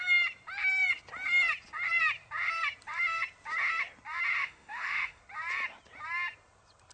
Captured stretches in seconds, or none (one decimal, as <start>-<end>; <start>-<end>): 0.0-4.4; 5.2-6.9